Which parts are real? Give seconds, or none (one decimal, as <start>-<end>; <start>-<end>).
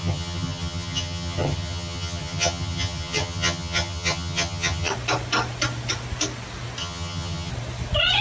4.9-6.8; 7.5-8.2